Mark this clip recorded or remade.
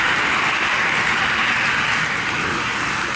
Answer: recorded